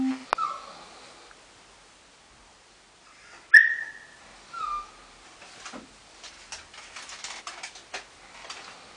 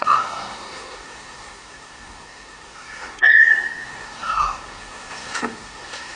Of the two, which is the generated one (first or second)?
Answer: second